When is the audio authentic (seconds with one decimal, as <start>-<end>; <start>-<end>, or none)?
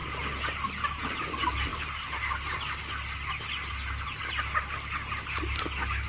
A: 0.0-6.1